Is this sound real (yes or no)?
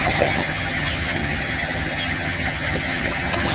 no